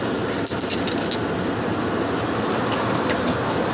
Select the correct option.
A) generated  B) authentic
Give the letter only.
B